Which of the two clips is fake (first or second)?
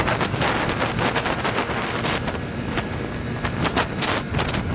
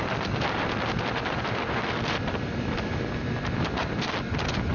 second